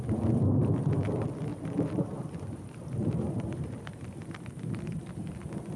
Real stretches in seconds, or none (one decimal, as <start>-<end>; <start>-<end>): 0.0-1.5; 5.0-5.8